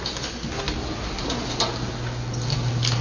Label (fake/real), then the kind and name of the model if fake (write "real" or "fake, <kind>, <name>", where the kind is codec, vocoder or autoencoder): real